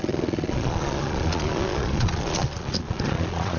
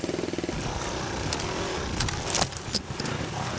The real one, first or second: second